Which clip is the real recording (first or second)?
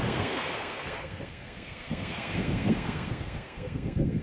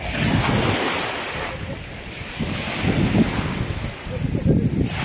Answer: second